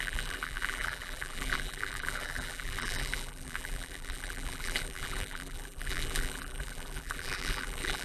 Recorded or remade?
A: remade